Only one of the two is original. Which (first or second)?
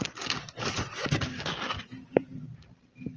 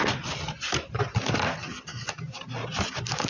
second